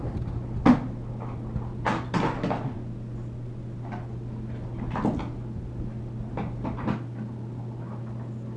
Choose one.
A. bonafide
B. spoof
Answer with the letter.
A